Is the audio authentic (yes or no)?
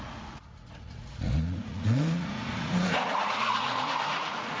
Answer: no